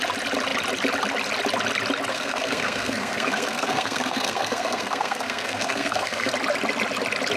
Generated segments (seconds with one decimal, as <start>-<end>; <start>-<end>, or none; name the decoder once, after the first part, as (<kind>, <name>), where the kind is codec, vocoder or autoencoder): 2.1-6.3 (codec, SNAC)